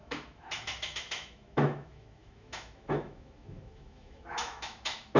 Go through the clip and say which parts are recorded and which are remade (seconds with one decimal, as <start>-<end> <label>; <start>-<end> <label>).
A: 0.0-5.2 remade